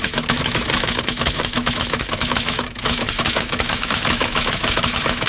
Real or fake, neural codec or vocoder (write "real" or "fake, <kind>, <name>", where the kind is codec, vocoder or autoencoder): fake, autoencoder, DAC-VAE